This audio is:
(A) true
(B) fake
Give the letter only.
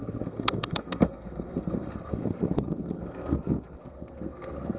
B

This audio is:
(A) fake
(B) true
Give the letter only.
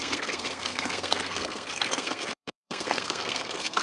A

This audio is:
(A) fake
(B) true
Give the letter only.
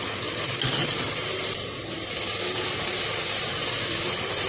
B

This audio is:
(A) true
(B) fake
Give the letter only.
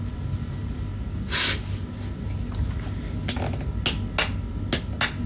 A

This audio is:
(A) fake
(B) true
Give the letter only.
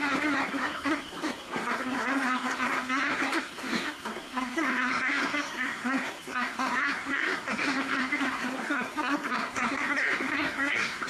A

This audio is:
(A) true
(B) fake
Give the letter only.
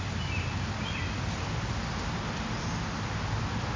A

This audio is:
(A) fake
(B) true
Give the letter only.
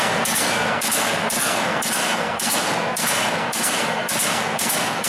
A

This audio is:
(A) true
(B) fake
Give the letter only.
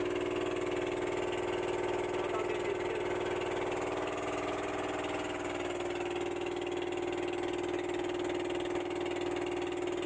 A